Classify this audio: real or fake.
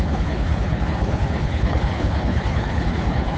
fake